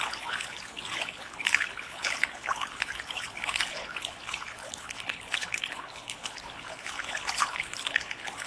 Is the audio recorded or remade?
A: remade